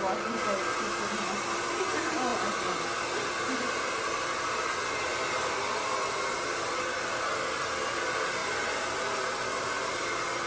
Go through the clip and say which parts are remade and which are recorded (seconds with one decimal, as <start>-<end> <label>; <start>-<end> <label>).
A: 0.0-10.5 recorded